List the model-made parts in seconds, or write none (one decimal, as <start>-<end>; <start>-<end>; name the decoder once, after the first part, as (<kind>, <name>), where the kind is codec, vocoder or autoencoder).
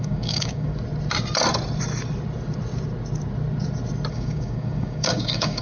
0.0-0.7 (codec, DAC); 4.1-5.6